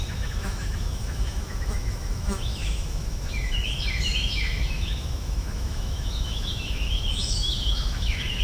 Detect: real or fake fake